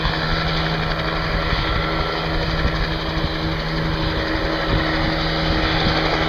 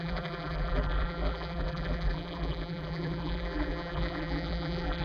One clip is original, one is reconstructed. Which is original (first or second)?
first